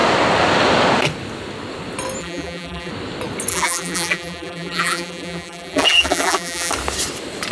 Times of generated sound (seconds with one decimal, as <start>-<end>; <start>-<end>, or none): 2.2-2.9; 3.5-6.7